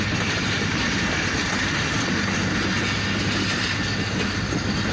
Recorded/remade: recorded